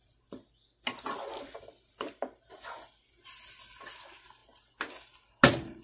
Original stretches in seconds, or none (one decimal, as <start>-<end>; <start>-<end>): 0.0-5.8

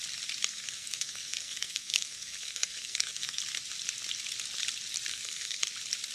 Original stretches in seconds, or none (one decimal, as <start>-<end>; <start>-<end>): 0.0-0.5; 3.4-5.1; 5.6-6.1

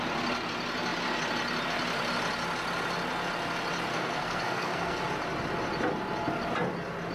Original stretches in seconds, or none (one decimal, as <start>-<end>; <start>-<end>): 0.0-3.9; 5.0-7.1

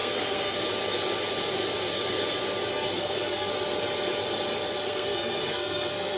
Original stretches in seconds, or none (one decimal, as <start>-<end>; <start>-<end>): 0.6-2.7; 3.5-4.8

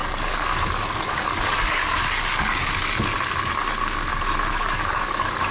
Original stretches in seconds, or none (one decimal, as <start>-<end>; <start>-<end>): 2.8-4.5

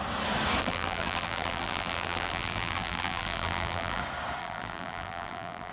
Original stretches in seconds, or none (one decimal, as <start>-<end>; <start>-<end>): 0.0-0.6; 4.0-4.4